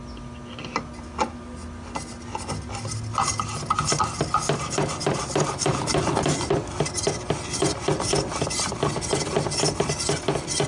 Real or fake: real